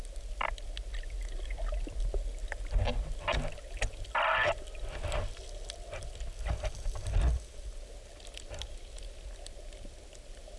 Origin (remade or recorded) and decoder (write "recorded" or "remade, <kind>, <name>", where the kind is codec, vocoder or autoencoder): recorded